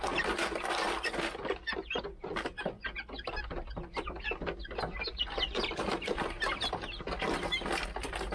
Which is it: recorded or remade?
recorded